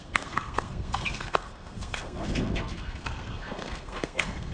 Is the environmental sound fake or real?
fake